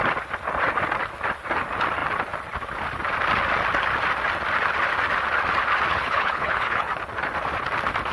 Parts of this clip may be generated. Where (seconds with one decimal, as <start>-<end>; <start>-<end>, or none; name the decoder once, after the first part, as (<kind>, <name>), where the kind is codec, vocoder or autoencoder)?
5.9-6.9 (codec, HILCodec)